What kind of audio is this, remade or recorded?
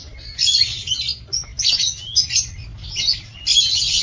recorded